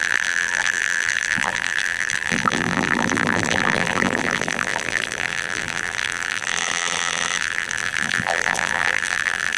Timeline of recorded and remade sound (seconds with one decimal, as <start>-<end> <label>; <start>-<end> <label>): 0.0-9.6 remade